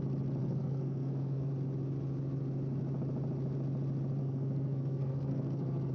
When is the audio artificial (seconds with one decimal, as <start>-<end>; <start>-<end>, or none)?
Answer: 0.4-1.5; 4.2-5.9